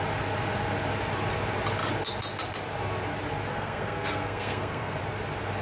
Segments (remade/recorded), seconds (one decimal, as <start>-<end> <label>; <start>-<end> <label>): 0.0-3.5 recorded; 3.5-5.0 remade; 5.0-5.6 recorded